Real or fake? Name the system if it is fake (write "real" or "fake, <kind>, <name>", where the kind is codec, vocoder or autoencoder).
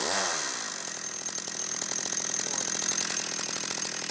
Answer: real